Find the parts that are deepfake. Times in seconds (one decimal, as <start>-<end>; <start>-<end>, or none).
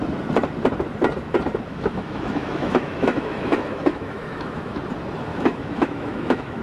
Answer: 1.7-4.8; 5.3-6.6